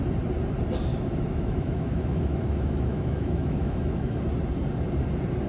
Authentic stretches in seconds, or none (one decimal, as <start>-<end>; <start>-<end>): 0.0-0.9; 4.2-5.5